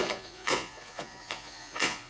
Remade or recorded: remade